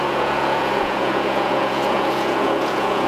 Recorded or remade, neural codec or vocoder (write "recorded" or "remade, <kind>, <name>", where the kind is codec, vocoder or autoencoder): remade, vocoder, Vocos